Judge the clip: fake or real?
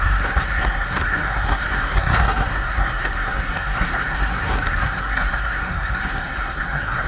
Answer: fake